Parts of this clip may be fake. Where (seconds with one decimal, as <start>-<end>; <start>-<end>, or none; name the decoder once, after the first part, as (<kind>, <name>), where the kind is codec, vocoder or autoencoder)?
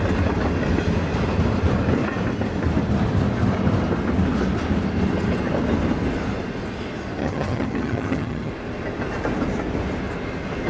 7.2-8.5 (vocoder, HiFi-GAN)